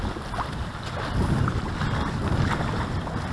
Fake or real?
real